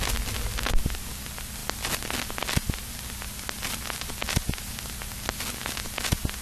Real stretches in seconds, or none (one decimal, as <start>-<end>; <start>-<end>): 0.0-6.4

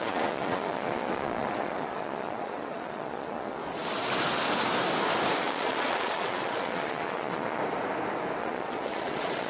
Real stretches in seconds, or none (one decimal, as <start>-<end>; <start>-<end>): 3.6-5.4; 7.6-8.4